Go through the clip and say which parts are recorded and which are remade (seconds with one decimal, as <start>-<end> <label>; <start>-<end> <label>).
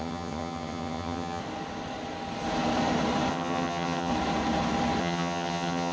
0.0-1.4 remade; 1.4-3.3 recorded; 3.3-4.1 remade; 4.1-5.0 recorded; 5.0-5.9 remade